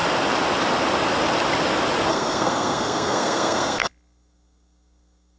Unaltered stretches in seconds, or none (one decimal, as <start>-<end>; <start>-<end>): 0.0-2.1